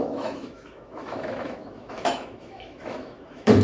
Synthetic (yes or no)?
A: yes